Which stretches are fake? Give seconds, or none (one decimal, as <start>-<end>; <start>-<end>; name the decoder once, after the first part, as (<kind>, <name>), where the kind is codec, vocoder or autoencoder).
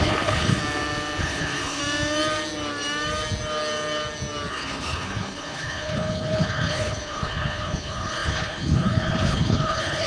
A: 0.0-0.6 (codec, HILCodec); 1.2-1.8; 4.5-10.1